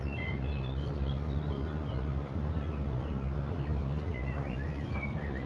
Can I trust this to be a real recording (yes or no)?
no